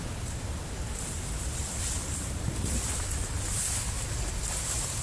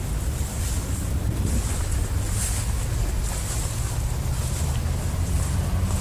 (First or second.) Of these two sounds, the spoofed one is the first